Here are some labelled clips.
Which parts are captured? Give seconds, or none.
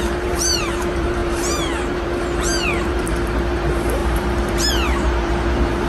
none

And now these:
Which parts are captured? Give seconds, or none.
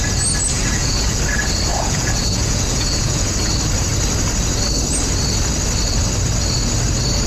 0.0-0.5; 1.2-1.7; 3.3-7.3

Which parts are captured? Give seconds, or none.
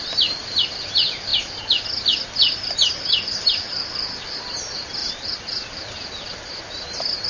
0.0-5.0; 5.7-7.3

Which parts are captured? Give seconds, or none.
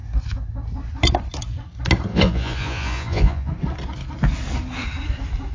0.0-2.1; 3.5-5.5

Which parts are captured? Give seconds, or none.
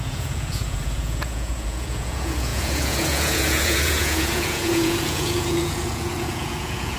none